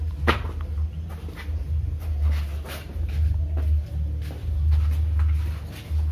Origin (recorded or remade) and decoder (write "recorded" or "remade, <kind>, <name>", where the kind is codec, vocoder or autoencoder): recorded